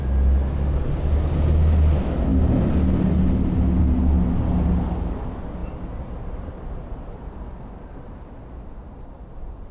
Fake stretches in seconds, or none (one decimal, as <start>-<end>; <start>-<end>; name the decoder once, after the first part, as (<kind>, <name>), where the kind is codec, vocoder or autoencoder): none